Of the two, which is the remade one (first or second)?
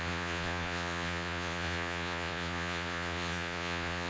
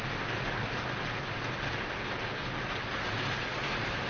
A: first